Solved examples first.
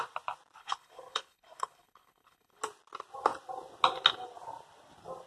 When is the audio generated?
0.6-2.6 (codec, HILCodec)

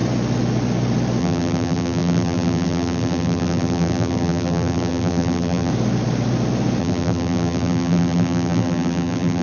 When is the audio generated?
1.2-5.7 (vocoder, BigVGAN v2); 6.8-9.4

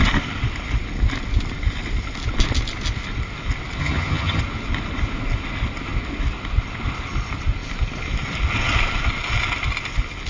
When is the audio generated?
3.8-4.4 (vocoder, HiFi-GAN)

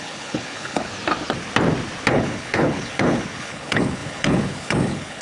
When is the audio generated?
0.0-0.9 (codec, HILCodec); 2.1-5.2

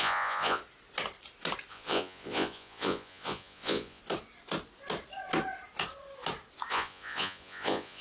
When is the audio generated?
0.0-0.6 (vocoder, Vocos); 1.7-4.0; 6.7-8.0